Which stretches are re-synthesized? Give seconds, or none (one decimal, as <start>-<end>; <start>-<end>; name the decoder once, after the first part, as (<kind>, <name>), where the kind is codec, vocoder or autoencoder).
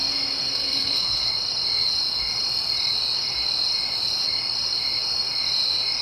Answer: 0.5-1.3 (codec, SNAC)